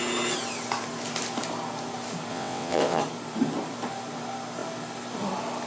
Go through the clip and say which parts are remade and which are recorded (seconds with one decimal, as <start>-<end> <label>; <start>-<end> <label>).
0.0-2.3 recorded; 2.3-3.0 remade; 3.0-5.7 recorded